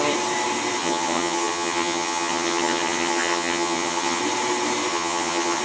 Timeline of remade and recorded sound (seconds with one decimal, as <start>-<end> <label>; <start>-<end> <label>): 0.0-0.8 recorded; 0.8-4.2 remade; 4.2-4.9 recorded; 4.9-5.6 remade